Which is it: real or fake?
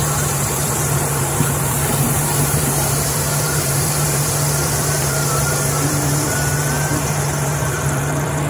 fake